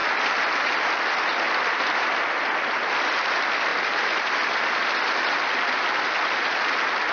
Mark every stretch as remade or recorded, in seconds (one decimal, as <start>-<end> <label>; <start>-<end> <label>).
0.0-7.1 recorded